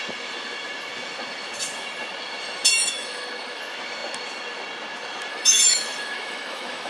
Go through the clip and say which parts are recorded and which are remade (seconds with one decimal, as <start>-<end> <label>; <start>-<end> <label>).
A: 0.0-2.7 recorded; 2.7-3.6 remade; 3.6-5.3 recorded; 5.3-6.9 remade